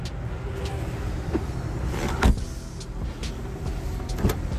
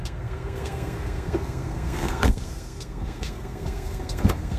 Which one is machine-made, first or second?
second